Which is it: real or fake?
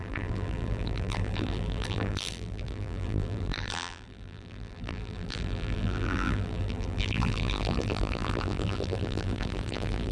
fake